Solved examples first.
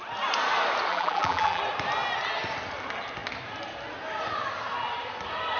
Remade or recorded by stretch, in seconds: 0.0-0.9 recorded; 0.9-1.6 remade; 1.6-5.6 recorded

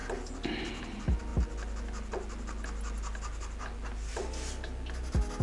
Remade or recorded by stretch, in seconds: 0.0-5.4 recorded

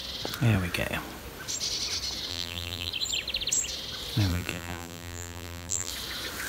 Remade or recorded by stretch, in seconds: 0.0-2.3 recorded; 2.3-2.9 remade; 2.9-4.3 recorded; 4.3-5.9 remade; 5.9-6.5 recorded

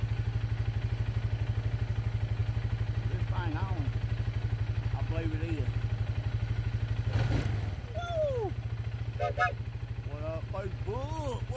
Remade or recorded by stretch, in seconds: 0.0-11.6 recorded

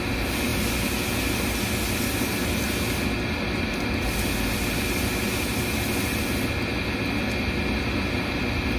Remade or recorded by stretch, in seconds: 0.0-8.8 recorded

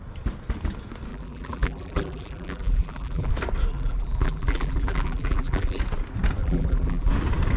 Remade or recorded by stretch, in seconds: 0.0-1.1 recorded; 1.1-3.3 remade; 3.3-3.7 recorded; 3.7-5.8 remade; 5.8-6.4 recorded; 6.4-7.1 remade; 7.1-7.6 recorded

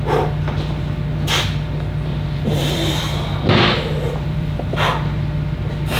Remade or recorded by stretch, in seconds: 0.0-2.1 recorded; 2.1-3.0 remade; 3.0-3.9 recorded; 3.9-4.9 remade; 4.9-6.0 recorded